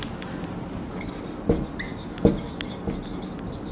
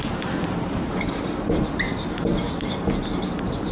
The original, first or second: first